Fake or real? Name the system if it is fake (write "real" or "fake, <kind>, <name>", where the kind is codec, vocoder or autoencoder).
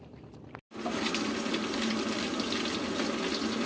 real